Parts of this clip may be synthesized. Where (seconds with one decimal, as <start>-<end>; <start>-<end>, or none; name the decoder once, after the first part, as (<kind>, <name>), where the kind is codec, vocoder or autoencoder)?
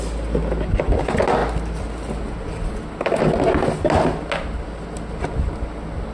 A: none